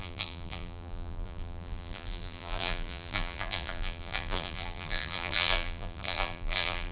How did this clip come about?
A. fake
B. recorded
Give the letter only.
A